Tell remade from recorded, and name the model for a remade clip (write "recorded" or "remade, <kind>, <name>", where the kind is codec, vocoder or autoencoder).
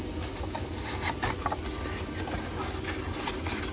recorded